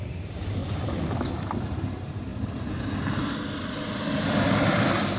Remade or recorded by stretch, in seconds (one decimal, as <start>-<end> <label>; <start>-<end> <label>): 0.0-5.2 recorded